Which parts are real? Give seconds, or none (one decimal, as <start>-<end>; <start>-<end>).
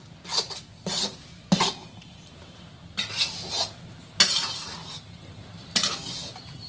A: 0.0-6.7